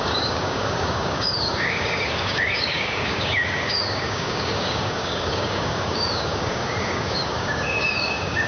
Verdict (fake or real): fake